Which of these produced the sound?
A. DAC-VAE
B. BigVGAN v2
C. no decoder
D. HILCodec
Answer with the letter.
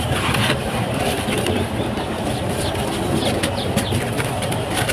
C